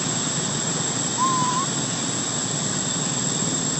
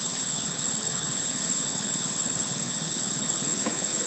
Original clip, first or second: first